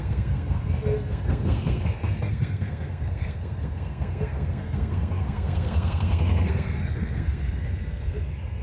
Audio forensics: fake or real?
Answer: fake